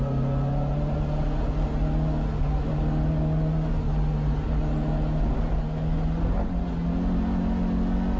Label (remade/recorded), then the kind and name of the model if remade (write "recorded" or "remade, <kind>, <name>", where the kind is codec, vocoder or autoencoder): recorded